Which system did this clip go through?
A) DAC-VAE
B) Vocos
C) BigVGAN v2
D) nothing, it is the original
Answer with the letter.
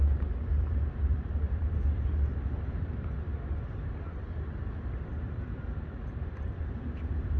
C